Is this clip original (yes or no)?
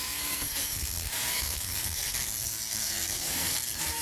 no